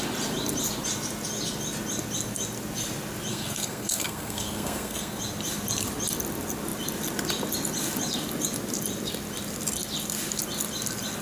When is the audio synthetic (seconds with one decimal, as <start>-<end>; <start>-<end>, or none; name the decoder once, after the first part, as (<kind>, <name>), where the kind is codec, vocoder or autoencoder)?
3.3-5.2 (codec, SNAC)